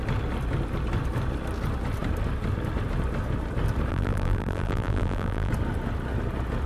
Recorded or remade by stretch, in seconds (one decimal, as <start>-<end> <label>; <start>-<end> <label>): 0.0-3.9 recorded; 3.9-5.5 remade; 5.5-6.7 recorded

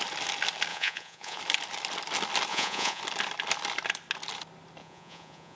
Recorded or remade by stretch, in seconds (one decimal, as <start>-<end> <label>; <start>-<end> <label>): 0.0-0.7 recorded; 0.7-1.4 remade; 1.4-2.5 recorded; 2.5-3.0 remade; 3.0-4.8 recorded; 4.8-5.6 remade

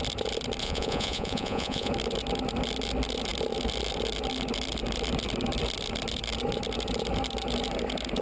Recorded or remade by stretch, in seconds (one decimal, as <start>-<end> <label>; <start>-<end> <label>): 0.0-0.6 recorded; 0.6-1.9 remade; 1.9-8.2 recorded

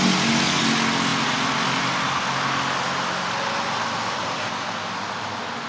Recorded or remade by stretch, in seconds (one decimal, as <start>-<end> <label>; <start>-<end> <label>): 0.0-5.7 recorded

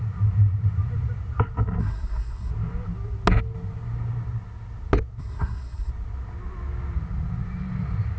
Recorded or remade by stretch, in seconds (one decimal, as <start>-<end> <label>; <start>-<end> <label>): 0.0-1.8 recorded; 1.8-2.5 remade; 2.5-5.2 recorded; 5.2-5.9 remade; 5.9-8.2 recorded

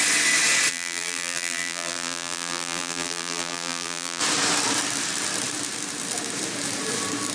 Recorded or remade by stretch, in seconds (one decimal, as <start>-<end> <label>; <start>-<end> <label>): 0.0-0.7 recorded; 0.7-4.2 remade; 4.2-7.3 recorded